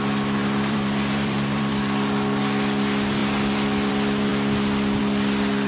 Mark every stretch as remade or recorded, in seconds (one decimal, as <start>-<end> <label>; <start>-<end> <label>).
0.0-0.4 recorded; 0.4-1.7 remade; 1.7-5.7 recorded